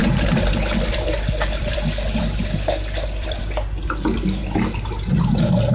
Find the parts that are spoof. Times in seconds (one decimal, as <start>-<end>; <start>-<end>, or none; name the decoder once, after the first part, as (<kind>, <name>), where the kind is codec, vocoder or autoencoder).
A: 0.0-3.4 (vocoder, BigVGAN v2); 4.4-5.3